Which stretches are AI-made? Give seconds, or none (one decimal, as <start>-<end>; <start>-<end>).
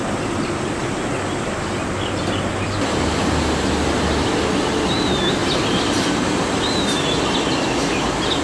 5.4-7.0